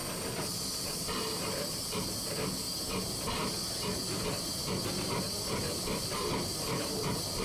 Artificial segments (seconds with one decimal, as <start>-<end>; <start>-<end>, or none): none